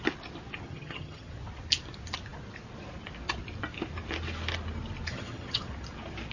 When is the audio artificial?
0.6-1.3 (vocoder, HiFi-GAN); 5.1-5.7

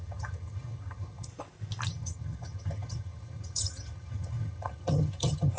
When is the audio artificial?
0.0-1.3 (vocoder, HiFi-GAN); 1.9-5.6

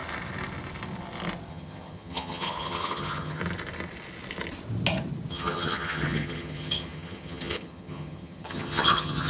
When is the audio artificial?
1.5-3.4 (vocoder, HiFi-GAN); 5.3-9.3

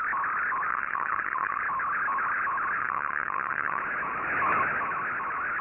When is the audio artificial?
0.7-1.6 (vocoder, HiFi-GAN); 2.8-3.8

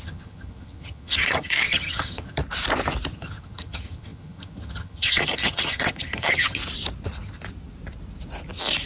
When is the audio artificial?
0.0-2.4 (vocoder, HiFi-GAN); 3.1-6.6